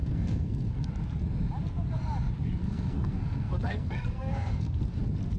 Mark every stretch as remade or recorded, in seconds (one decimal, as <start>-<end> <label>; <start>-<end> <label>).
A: 0.0-0.9 remade; 0.9-2.6 recorded; 2.6-4.8 remade; 4.8-5.4 recorded